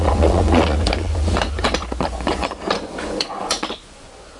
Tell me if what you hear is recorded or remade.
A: remade